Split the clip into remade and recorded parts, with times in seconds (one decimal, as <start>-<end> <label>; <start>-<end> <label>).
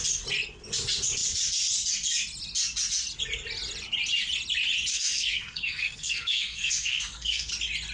0.0-4.9 recorded; 4.9-7.5 remade; 7.5-7.9 recorded